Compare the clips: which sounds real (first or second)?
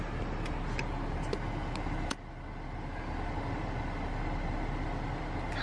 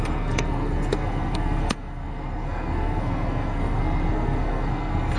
first